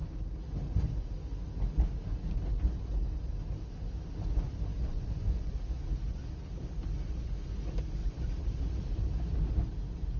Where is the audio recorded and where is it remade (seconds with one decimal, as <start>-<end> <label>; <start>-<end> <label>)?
0.0-4.9 recorded; 4.9-5.5 remade; 5.5-10.2 recorded